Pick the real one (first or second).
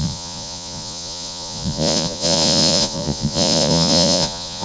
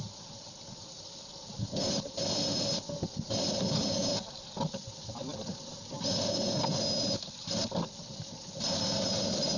second